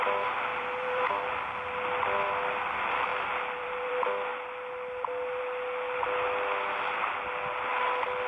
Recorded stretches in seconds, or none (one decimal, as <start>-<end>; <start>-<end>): 0.0-0.5; 1.3-3.1; 3.9-8.3